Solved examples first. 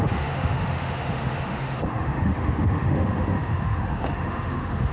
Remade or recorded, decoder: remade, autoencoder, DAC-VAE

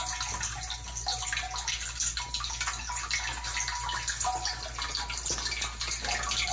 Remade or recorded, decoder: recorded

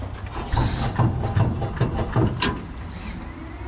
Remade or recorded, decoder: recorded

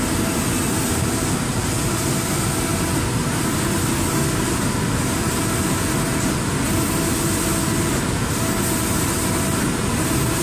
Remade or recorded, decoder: recorded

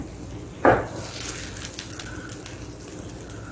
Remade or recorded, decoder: recorded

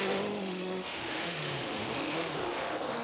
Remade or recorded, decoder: remade, autoencoder, DAC-VAE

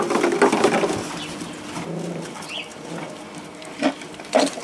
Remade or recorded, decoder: recorded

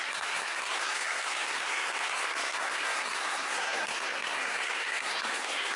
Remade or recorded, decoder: remade, codec, SNAC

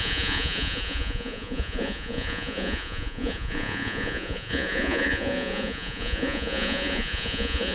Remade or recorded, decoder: remade, vocoder, Vocos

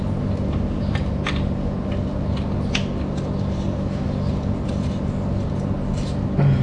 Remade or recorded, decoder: recorded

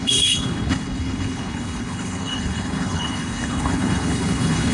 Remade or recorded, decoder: remade, codec, HILCodec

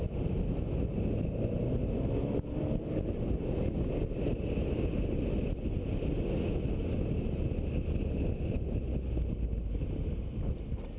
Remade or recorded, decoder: recorded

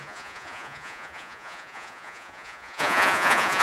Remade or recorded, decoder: remade, vocoder, Vocos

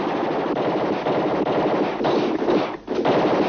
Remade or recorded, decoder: recorded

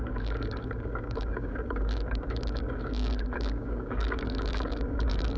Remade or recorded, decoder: remade, codec, DAC